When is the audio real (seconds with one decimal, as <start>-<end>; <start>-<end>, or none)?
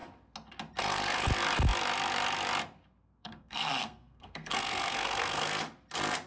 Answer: 0.0-3.2; 5.5-6.3